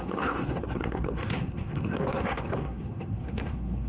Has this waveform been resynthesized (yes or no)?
yes